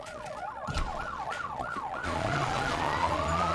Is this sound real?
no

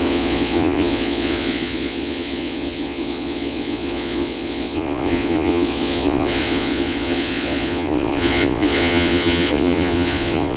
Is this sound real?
no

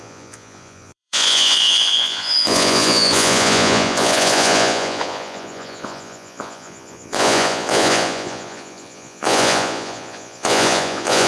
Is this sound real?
no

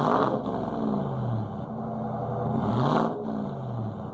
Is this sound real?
yes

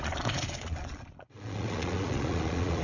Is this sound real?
no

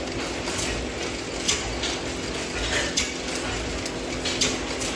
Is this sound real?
yes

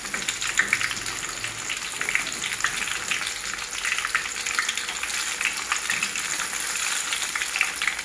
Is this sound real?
yes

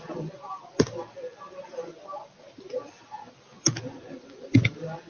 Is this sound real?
yes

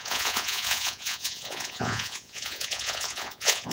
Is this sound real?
no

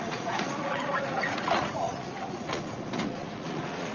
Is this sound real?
no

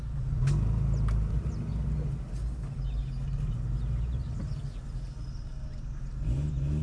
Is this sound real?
yes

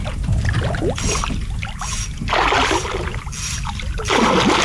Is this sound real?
yes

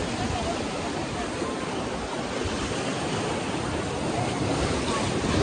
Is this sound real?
yes